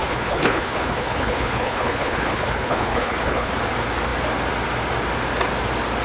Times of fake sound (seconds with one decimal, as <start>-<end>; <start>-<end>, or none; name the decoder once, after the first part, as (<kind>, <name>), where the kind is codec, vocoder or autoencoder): 0.0-3.5 (codec, HILCodec)